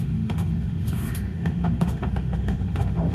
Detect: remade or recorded remade